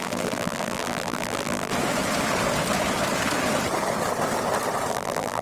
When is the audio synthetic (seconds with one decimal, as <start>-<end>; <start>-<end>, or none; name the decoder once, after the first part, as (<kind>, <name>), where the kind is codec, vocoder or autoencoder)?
0.0-1.7 (vocoder, BigVGAN v2); 4.9-5.4